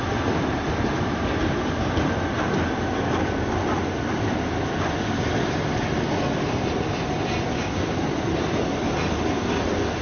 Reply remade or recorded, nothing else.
recorded